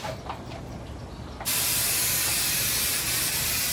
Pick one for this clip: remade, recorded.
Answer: recorded